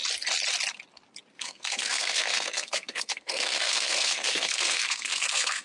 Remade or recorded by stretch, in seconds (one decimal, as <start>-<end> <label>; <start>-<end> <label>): 0.0-1.4 recorded; 1.4-5.6 remade